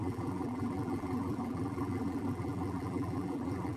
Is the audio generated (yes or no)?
yes